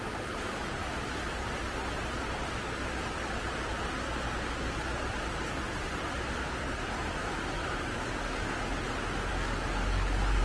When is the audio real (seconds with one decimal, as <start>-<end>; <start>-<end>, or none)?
0.0-7.6; 8.6-9.3